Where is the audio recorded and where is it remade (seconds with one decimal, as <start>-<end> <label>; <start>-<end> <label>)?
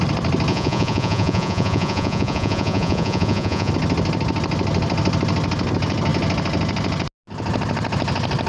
0.0-0.5 recorded; 0.5-3.7 remade; 3.7-8.5 recorded